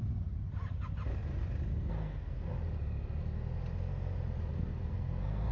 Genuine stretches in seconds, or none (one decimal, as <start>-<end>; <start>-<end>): 0.0-1.8; 2.5-4.5